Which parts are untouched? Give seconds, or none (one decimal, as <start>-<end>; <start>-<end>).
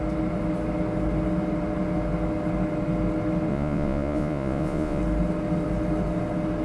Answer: 0.0-3.5; 5.0-6.6